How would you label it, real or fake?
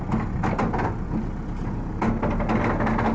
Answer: real